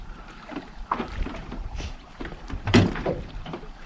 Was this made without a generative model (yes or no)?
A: no